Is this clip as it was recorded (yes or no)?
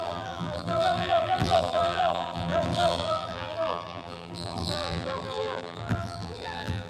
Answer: no